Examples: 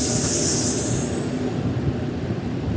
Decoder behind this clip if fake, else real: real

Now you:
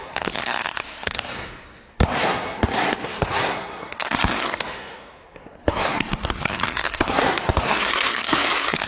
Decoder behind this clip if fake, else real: fake, codec, SNAC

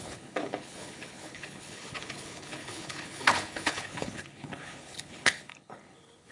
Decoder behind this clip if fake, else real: fake, codec, HILCodec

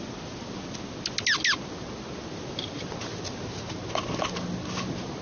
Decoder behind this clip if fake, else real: real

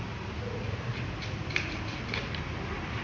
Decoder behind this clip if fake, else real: real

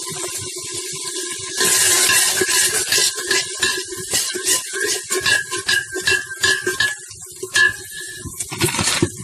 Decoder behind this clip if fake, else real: real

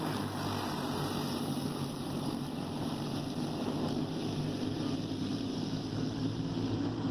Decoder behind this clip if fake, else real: real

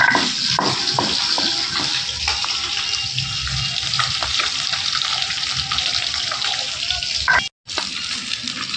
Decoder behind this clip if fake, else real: real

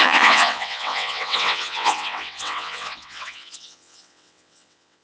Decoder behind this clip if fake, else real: fake, vocoder, WaveNeXt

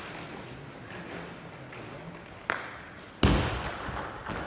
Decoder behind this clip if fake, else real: real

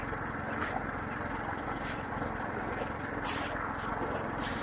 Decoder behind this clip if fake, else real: real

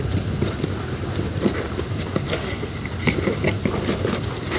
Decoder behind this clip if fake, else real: real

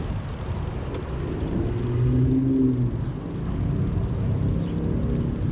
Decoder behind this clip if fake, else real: real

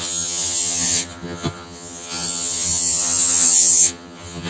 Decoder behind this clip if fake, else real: fake, vocoder, HiFi-GAN